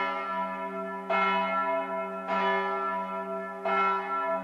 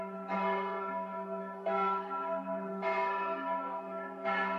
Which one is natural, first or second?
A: first